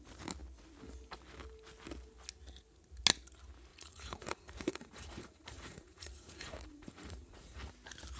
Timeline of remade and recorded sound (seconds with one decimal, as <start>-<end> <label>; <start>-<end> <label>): 0.0-3.7 recorded; 3.7-7.7 remade; 7.7-8.2 recorded